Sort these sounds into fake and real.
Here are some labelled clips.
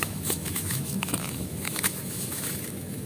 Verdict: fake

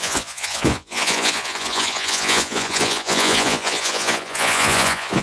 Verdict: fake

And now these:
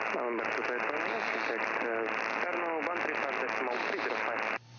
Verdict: real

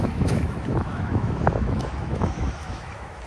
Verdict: fake